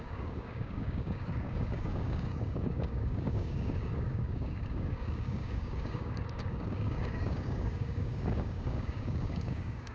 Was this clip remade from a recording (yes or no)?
yes